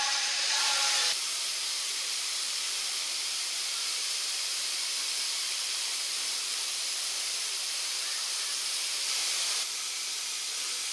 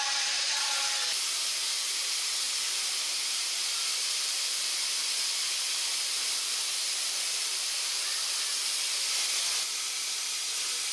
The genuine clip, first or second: second